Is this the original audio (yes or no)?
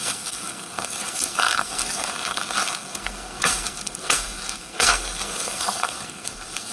no